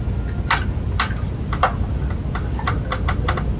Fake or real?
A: real